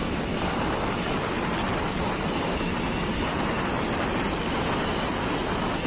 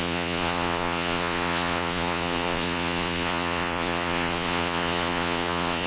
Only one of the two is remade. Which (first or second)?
second